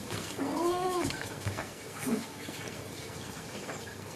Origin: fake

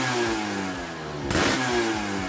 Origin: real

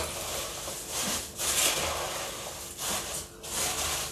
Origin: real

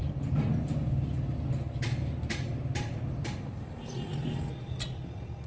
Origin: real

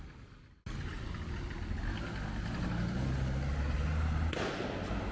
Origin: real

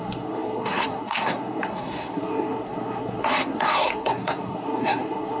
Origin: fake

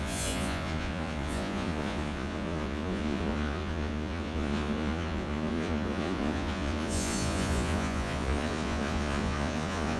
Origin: fake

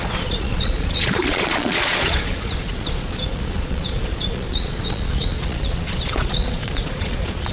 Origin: fake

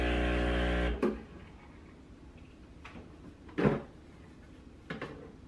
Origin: real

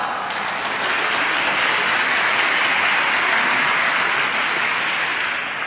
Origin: real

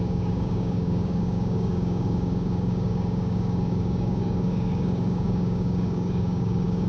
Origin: fake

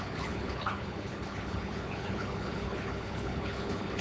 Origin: fake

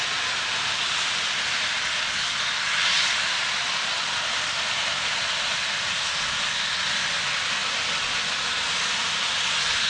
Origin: real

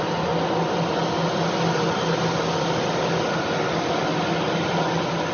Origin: real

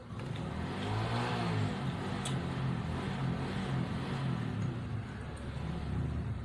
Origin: real